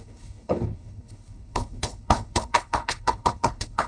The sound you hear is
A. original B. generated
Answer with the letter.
B